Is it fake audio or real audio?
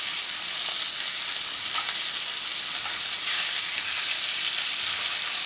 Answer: real